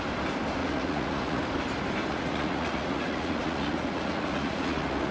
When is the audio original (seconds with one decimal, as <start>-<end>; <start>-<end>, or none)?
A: 0.0-0.6; 1.4-2.1